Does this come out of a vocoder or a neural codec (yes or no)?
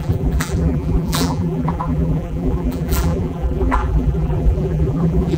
yes